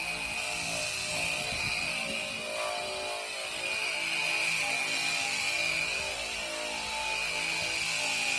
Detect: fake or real real